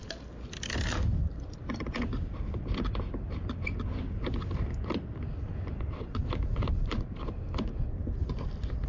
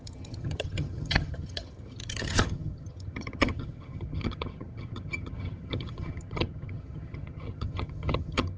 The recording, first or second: first